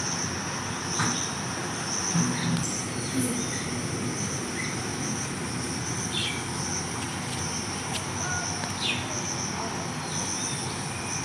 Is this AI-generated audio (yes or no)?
no